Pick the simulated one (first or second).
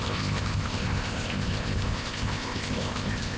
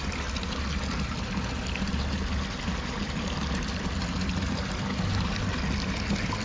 first